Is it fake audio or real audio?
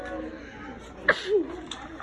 real